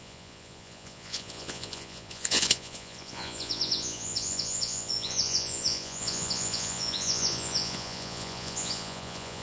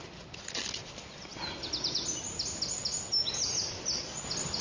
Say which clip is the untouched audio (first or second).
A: second